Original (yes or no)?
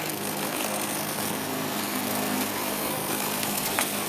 no